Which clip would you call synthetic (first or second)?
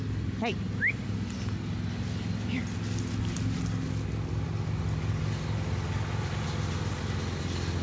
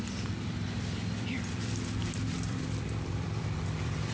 second